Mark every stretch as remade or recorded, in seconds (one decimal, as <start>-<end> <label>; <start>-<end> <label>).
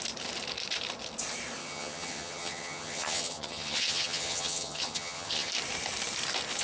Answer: 0.0-1.6 recorded; 1.6-5.5 remade; 5.5-6.6 recorded